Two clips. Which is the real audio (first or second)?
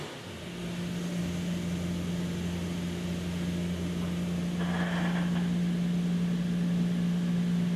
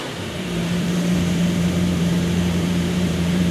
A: first